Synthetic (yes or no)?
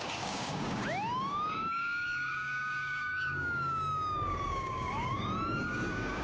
yes